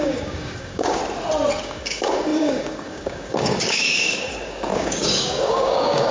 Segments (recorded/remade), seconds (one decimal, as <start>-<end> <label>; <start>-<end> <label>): 0.0-1.0 remade; 1.0-1.6 recorded; 1.6-6.1 remade